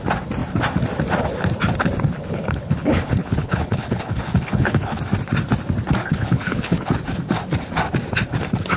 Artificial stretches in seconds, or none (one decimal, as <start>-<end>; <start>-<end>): 2.1-5.0; 6.0-6.9

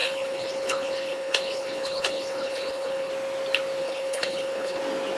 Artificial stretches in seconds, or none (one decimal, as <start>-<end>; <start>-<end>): 0.0-3.1; 3.8-4.8